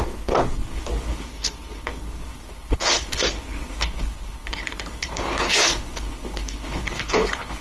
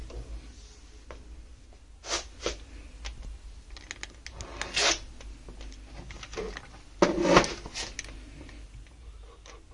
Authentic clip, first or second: second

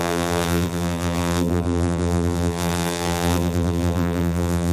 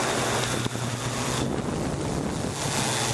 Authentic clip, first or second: second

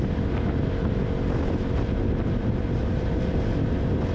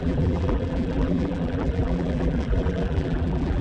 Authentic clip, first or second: first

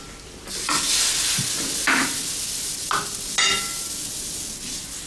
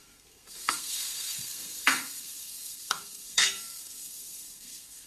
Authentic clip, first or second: first